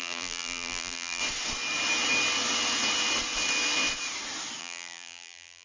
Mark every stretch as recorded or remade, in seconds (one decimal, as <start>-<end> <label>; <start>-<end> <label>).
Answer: 0.0-1.2 remade; 1.2-4.6 recorded; 4.6-5.6 remade